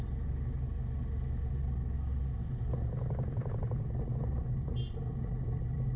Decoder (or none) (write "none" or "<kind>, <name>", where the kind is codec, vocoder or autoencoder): none